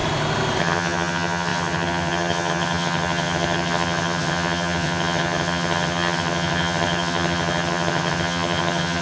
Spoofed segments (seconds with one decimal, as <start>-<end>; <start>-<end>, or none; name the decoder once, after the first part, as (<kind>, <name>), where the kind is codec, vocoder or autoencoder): 0.6-9.0 (vocoder, HiFi-GAN)